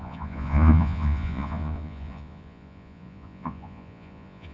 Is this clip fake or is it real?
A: fake